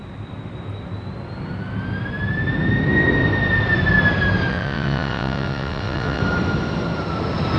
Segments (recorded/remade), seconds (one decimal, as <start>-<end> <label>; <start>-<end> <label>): 0.0-4.5 recorded; 4.5-6.2 remade; 6.2-7.6 recorded